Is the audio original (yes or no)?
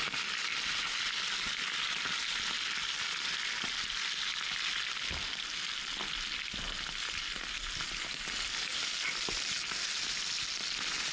yes